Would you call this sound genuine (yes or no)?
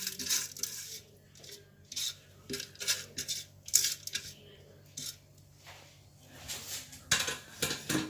yes